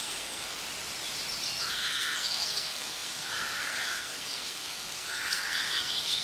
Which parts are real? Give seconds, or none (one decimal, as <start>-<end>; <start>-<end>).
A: 0.6-1.7